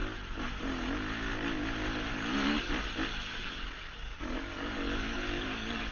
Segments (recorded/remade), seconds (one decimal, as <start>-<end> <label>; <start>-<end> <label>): 0.0-2.1 recorded; 2.1-2.7 remade; 2.7-3.3 recorded; 3.3-5.9 remade